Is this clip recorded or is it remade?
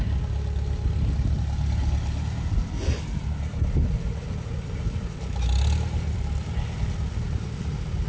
recorded